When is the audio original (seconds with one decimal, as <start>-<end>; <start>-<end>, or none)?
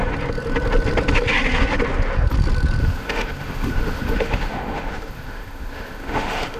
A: 0.0-2.8